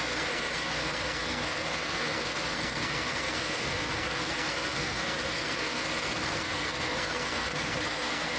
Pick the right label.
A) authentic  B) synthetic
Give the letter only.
B